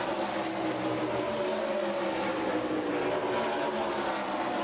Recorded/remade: recorded